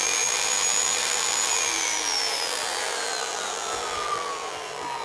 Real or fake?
fake